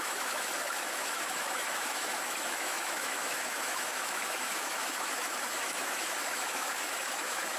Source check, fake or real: fake